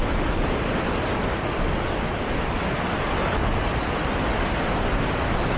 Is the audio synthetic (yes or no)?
no